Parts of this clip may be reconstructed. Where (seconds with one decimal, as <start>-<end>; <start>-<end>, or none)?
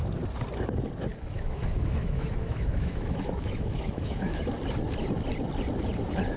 1.1-4.4